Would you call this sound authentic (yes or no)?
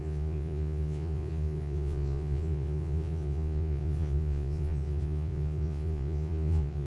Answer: no